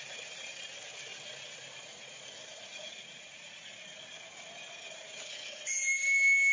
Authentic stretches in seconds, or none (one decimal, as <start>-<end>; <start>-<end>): 0.0-6.5